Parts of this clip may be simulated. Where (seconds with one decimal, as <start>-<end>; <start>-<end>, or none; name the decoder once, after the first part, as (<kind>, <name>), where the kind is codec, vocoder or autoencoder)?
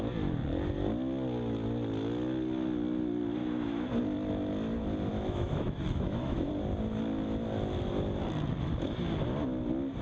3.4-3.9 (autoencoder, DAC-VAE); 5.1-6.5